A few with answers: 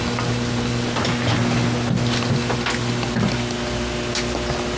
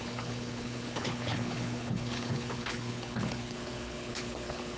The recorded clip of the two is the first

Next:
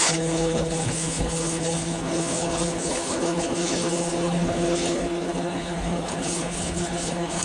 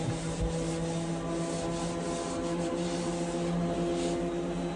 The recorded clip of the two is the second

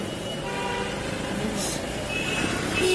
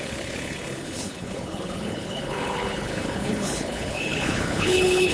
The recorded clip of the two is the first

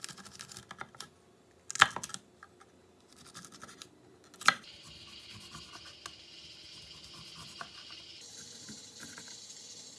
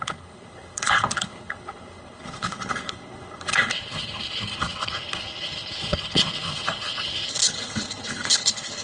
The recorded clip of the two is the first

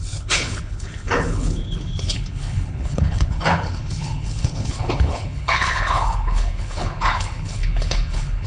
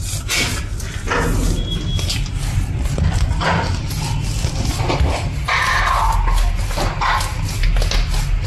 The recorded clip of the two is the second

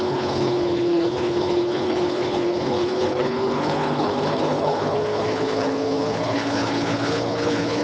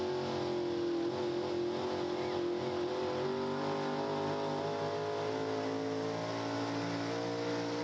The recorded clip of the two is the second